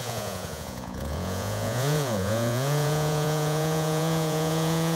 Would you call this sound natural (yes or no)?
no